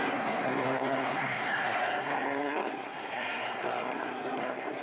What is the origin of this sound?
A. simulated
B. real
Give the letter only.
A